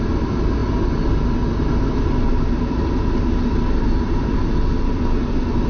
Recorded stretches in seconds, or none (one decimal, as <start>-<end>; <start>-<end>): 0.6-4.0; 4.4-5.7